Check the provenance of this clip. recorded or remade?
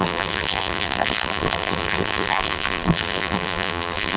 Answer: remade